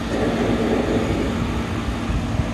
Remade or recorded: recorded